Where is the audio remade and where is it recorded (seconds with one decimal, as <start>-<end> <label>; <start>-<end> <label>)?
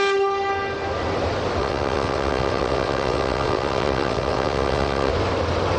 0.0-1.6 recorded; 1.6-5.1 remade; 5.1-5.8 recorded